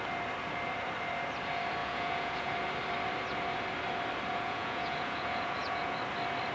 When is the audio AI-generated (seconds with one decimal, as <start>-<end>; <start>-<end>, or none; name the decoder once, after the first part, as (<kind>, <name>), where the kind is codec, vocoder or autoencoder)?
1.8-2.5 (vocoder, Vocos); 4.3-6.0